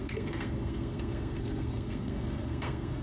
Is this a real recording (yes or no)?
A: no